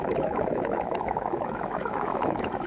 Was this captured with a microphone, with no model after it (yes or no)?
no